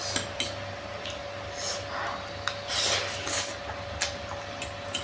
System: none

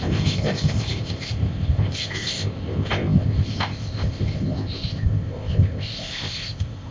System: codec, ZipCodec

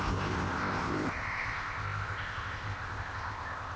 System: codec, ZipCodec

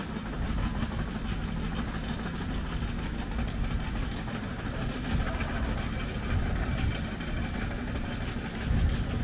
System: none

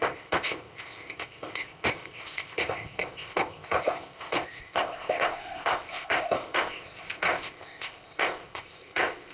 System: codec, ZipCodec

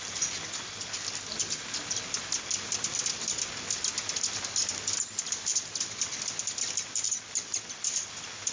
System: none